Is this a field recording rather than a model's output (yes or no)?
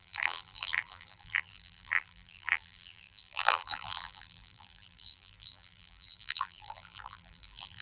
no